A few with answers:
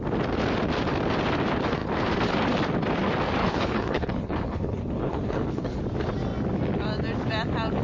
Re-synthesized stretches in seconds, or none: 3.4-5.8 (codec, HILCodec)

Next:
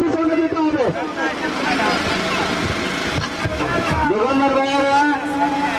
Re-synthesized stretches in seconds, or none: 3.5-5.0 (autoencoder, DAC-VAE)

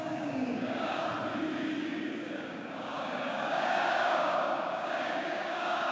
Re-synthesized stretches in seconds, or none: 0.0-1.0 (codec, DAC); 1.8-5.9

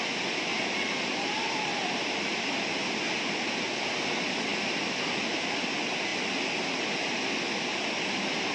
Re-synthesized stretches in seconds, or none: 0.5-2.9 (vocoder, BigVGAN v2)

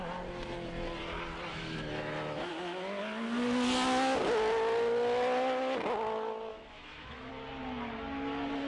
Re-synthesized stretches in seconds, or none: 1.5-2.5 (autoencoder, DAC-VAE); 6.5-7.3